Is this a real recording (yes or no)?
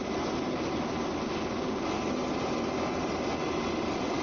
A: yes